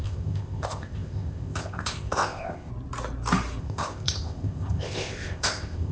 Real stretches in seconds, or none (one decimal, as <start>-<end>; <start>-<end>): 2.7-3.6